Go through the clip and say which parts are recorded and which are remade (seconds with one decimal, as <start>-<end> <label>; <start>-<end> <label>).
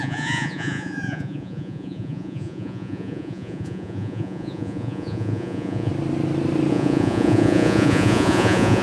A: 0.0-5.9 remade; 5.9-6.7 recorded; 6.7-8.8 remade